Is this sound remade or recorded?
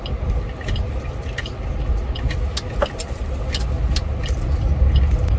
recorded